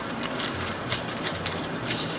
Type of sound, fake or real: fake